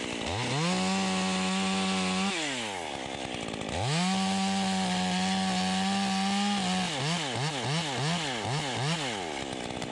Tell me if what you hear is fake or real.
real